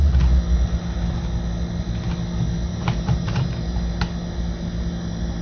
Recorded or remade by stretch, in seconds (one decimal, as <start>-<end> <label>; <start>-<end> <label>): 0.0-2.7 recorded; 2.7-3.8 remade; 3.8-5.4 recorded